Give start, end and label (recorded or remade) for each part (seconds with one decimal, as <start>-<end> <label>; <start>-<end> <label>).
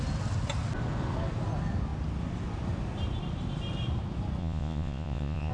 0.0-4.4 recorded; 4.4-5.5 remade